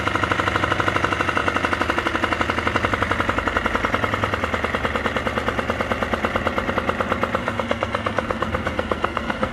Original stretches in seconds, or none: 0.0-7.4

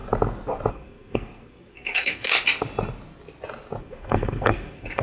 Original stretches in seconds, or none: 0.0-0.7; 2.3-3.8

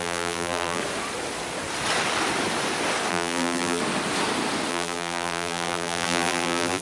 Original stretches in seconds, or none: 0.8-3.1; 3.8-4.7